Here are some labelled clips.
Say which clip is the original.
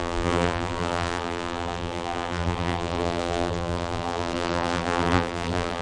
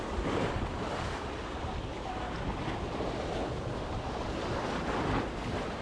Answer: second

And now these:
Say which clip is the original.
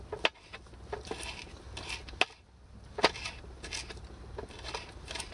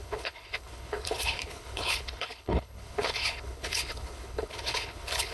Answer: first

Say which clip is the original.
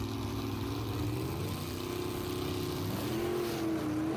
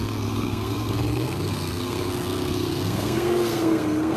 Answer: first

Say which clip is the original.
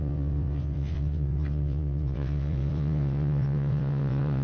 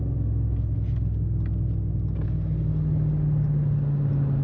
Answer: second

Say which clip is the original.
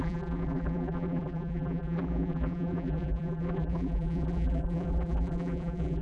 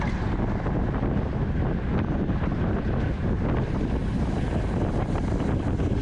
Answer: second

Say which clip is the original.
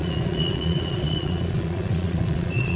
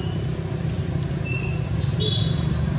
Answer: second